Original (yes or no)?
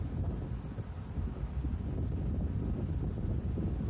yes